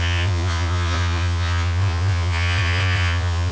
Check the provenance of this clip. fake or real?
fake